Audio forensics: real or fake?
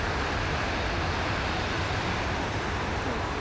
real